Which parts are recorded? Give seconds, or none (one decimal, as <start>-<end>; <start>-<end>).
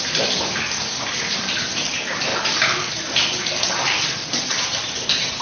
0.0-4.2; 4.9-5.4